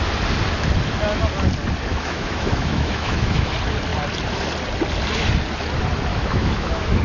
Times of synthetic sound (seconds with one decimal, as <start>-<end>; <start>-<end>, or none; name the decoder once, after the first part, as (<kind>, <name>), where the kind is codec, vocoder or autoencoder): 1.9-3.5 (autoencoder, DAC-VAE); 6.1-7.0